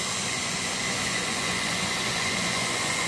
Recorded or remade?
remade